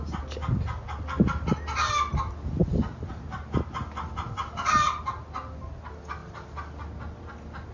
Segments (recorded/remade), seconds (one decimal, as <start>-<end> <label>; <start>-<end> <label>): 0.0-7.7 recorded